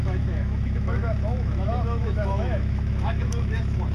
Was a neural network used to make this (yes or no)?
yes